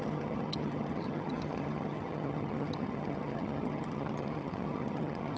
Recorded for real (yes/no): no